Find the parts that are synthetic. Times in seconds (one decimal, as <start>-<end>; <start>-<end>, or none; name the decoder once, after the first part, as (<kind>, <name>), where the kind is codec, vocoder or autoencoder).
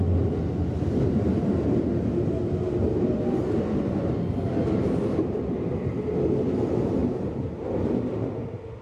none